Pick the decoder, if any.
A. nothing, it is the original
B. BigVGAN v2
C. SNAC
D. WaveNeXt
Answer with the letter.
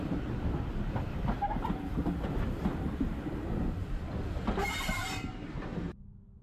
A